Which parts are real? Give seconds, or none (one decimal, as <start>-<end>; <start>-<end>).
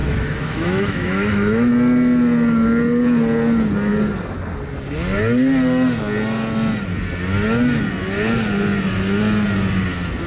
1.7-10.3